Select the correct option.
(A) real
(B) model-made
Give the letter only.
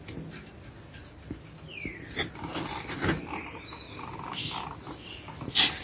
A